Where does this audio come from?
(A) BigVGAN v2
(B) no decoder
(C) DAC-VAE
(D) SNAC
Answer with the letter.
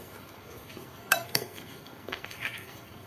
D